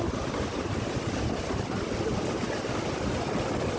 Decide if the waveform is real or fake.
real